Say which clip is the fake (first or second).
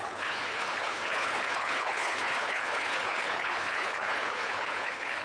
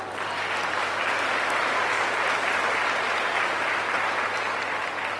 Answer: first